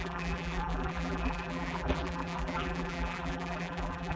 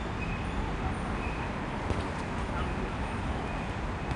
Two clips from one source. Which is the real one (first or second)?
second